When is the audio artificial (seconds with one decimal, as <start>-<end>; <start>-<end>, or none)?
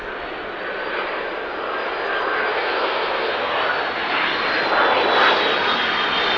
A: 2.5-3.5